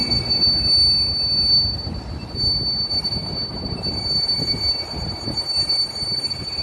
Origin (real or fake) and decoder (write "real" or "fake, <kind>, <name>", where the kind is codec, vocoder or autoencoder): real